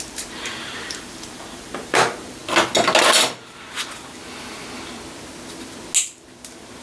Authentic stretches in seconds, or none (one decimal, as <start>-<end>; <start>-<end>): 2.4-6.8